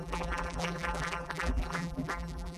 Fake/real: fake